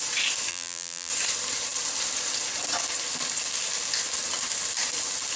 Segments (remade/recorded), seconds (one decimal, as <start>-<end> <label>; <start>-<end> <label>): 0.0-0.5 recorded; 0.5-1.1 remade; 1.1-5.4 recorded